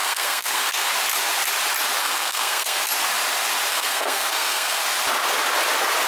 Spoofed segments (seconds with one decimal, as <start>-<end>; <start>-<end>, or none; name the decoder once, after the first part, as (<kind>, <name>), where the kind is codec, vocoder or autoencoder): 0.0-0.9 (codec, SNAC); 2.0-2.8; 3.7-4.8